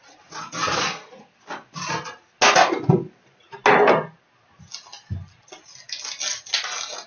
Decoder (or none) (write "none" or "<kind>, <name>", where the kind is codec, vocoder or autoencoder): none